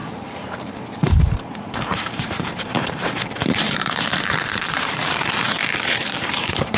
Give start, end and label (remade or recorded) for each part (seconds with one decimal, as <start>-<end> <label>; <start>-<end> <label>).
0.0-6.8 remade